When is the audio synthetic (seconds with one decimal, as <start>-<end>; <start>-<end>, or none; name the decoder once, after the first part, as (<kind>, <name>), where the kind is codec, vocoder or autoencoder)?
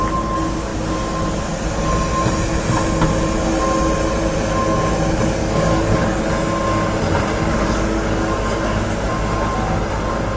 5.4-6.2 (codec, DAC); 7.5-9.1